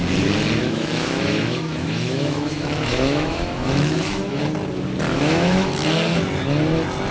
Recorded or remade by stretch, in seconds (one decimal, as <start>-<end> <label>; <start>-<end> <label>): 0.0-0.6 recorded; 0.6-4.4 remade; 4.4-5.1 recorded; 5.1-5.7 remade; 5.7-7.1 recorded